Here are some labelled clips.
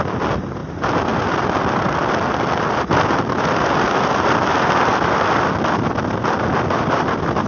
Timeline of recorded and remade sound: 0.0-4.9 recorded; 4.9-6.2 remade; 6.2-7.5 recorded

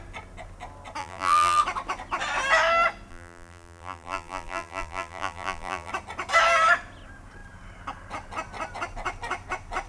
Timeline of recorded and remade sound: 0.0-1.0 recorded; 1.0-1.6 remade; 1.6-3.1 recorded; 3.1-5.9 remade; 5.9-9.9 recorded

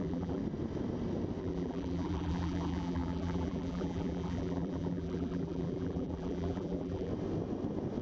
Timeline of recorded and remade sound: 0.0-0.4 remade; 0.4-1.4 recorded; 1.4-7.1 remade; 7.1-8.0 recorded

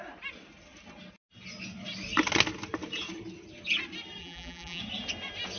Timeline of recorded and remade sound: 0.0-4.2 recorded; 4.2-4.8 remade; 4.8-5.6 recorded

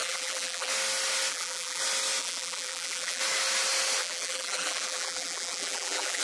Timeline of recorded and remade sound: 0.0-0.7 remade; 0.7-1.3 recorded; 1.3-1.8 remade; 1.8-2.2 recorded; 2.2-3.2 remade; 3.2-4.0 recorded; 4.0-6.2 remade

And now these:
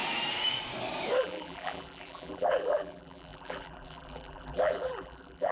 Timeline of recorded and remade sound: 0.0-1.2 recorded; 1.2-5.5 remade

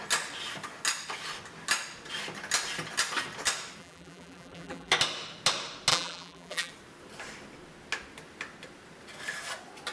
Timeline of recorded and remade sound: 0.0-3.8 recorded; 3.8-4.9 remade; 4.9-5.9 recorded; 5.9-6.7 remade; 6.7-9.9 recorded

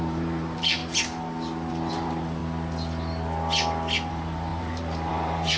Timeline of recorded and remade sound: 0.0-0.8 remade; 0.8-1.7 recorded; 1.7-2.4 remade; 2.4-4.1 recorded; 4.1-5.6 remade